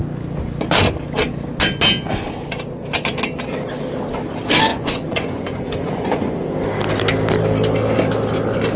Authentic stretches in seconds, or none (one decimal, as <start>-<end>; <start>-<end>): 0.0-4.7; 6.4-8.8